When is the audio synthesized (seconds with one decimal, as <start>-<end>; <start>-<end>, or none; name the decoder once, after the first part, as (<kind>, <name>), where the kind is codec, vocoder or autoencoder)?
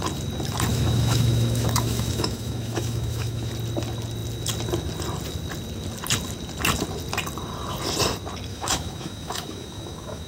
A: 0.7-3.5 (autoencoder, DAC-VAE); 8.5-10.3